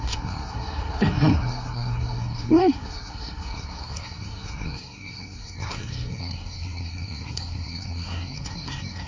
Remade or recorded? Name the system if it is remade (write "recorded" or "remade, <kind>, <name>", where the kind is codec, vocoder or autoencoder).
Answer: remade, codec, SNAC